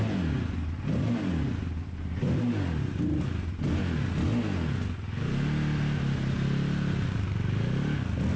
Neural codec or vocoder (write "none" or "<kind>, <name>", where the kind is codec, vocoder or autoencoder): none